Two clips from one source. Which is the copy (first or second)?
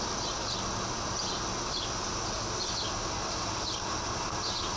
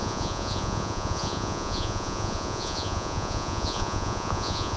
second